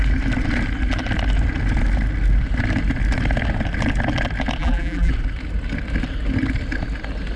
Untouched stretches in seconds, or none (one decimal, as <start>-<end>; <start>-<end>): 0.0-4.6; 5.1-7.4